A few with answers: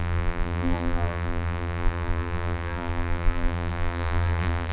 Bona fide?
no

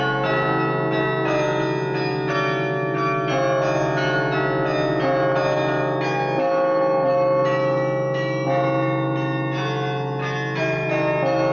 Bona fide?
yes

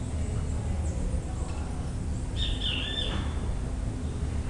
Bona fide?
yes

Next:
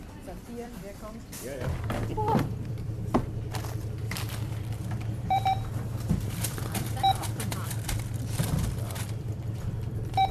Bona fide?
no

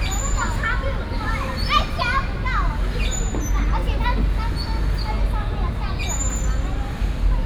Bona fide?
yes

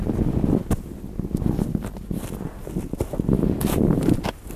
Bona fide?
yes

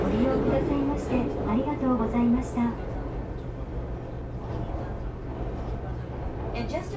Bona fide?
yes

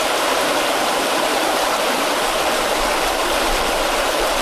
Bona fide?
no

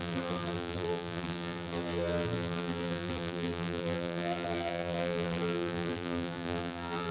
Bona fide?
no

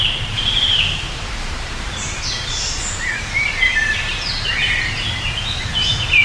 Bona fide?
no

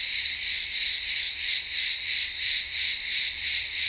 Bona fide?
no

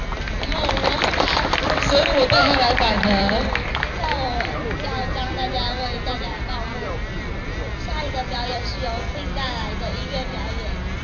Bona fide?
no